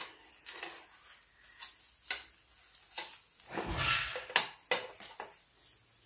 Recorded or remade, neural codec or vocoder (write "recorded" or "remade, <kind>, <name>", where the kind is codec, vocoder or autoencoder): recorded